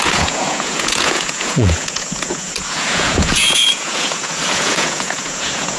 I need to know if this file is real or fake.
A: fake